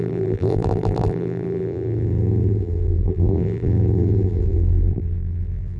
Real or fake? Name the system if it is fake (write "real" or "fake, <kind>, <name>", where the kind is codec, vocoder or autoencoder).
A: fake, vocoder, BigVGAN v2